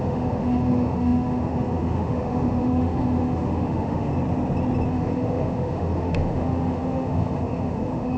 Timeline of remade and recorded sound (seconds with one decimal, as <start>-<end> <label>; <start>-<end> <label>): 0.0-4.1 remade; 4.1-4.9 recorded; 4.9-8.2 remade